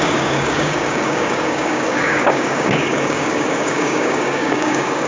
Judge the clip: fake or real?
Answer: fake